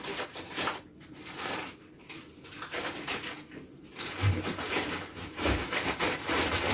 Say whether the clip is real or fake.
fake